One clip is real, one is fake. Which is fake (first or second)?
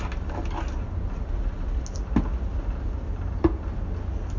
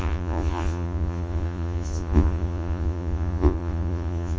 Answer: second